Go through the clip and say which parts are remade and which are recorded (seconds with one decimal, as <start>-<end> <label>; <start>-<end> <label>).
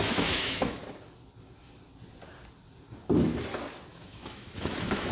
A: 0.0-0.8 remade; 0.8-3.9 recorded; 3.9-5.1 remade